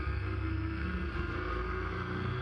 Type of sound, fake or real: fake